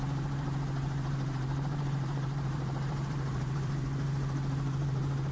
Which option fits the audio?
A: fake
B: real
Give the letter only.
A